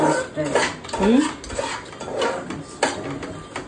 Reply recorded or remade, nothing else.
recorded